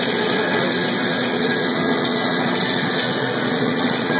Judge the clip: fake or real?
fake